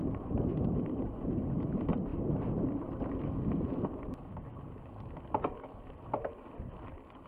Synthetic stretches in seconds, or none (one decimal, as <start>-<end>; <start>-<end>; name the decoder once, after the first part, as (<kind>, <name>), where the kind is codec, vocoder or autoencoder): 0.0-1.3 (vocoder, BigVGAN v2); 2.1-2.7